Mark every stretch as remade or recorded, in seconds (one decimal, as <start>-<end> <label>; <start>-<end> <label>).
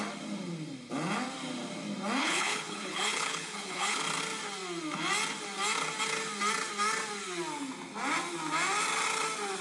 0.0-2.2 recorded; 2.2-4.0 remade; 4.0-9.6 recorded